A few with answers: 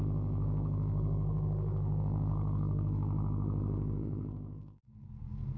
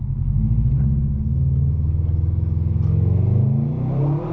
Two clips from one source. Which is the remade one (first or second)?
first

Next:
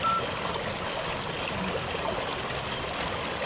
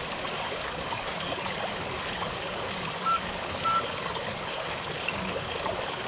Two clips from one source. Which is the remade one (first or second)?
second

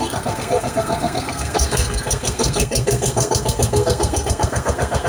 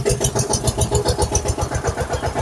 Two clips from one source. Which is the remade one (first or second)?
first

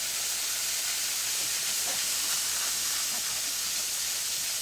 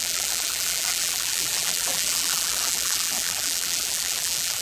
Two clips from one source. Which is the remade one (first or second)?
second